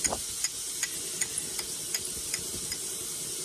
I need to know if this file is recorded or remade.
recorded